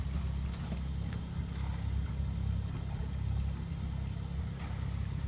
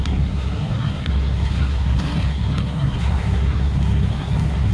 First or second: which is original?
first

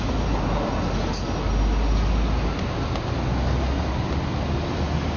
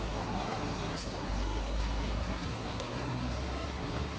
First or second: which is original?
first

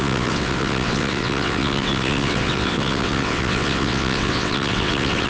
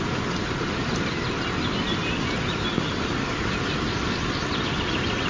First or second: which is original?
second